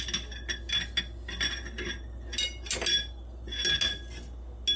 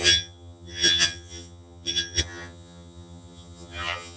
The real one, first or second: first